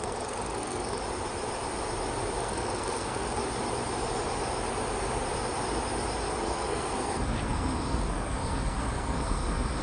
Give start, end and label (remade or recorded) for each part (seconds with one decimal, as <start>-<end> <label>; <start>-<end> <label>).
0.0-1.0 remade; 1.0-2.4 recorded; 2.4-3.4 remade; 3.4-6.3 recorded; 6.3-9.8 remade